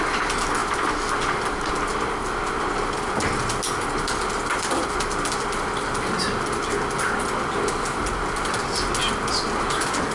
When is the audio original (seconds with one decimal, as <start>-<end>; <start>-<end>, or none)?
0.0-10.1